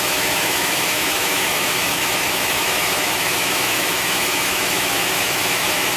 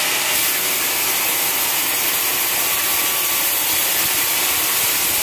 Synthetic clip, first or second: first